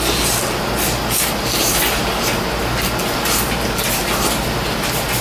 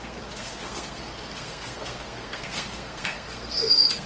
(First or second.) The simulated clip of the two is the second